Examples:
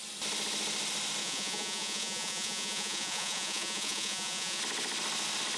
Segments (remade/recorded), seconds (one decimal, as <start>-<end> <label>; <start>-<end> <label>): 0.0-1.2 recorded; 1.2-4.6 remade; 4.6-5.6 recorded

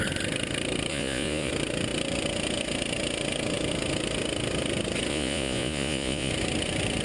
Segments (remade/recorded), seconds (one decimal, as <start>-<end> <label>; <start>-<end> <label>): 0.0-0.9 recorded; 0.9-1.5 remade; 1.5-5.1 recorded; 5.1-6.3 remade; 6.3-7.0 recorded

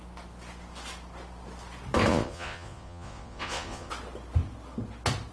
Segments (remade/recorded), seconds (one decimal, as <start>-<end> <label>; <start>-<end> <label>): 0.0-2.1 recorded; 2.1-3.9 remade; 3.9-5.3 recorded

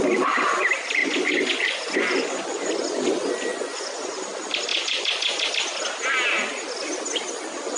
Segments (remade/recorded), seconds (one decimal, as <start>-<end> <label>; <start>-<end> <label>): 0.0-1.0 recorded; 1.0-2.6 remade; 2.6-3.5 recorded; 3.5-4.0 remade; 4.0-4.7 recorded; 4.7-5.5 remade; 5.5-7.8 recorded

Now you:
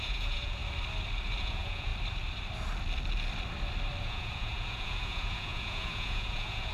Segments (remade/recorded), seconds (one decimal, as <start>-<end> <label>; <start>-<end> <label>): 0.0-0.6 remade; 0.6-1.4 recorded; 1.4-1.9 remade; 1.9-4.0 recorded; 4.0-6.7 remade

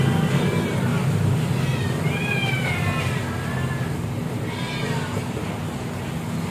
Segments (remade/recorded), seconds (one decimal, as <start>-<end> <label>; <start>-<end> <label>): 0.0-6.5 recorded

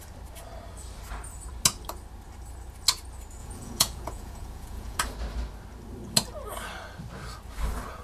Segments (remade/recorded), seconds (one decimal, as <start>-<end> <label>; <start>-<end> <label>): 0.0-3.4 recorded; 3.4-5.0 remade; 5.0-8.0 recorded